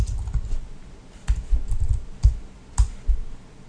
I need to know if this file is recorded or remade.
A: recorded